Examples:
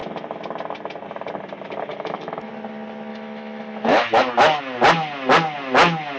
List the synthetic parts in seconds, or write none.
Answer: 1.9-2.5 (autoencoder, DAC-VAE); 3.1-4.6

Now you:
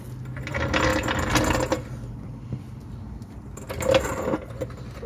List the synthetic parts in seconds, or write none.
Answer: none

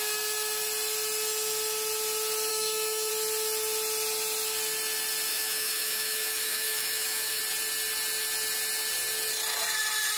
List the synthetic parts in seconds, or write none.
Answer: 2.5-3.1 (autoencoder, DAC-VAE); 5.3-7.4

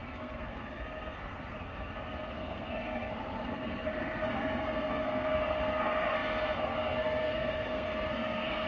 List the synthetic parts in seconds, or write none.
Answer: 0.0-8.7 (codec, SNAC)

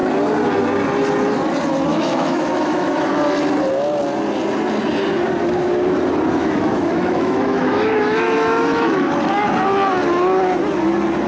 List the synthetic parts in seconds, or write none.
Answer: 1.9-3.1 (autoencoder, DAC-VAE); 6.4-9.1

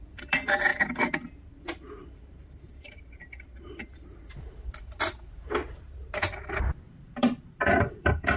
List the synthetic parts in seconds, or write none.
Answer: 0.0-0.7 (vocoder, BigVGAN v2); 1.3-5.6; 7.0-8.4

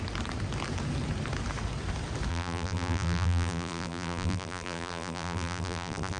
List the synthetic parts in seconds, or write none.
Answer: 2.3-6.2 (vocoder, BigVGAN v2)

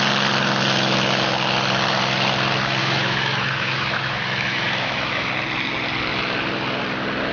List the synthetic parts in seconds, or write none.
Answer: 2.8-5.3 (autoencoder, DAC-VAE)